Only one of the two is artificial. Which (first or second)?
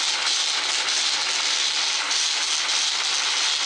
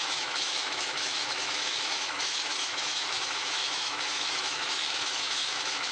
second